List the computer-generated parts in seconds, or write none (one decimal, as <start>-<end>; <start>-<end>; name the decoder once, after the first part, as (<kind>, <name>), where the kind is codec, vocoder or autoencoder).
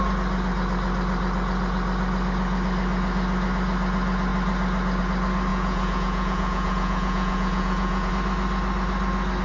5.5-8.1 (vocoder, Vocos)